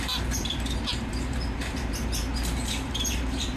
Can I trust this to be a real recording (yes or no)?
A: no